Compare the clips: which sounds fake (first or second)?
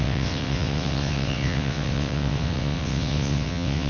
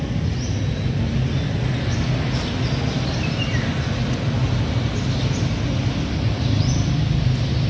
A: first